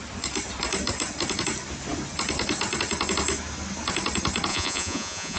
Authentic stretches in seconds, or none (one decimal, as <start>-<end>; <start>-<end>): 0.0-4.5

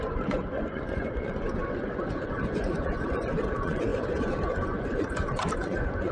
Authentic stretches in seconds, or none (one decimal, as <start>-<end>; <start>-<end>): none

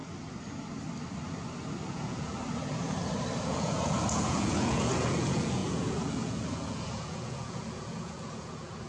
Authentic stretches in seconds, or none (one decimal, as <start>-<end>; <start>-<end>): 0.0-1.9; 2.3-3.4

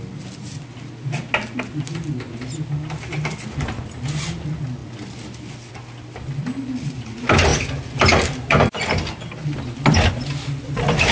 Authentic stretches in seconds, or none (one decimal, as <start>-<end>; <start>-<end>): 0.0-11.1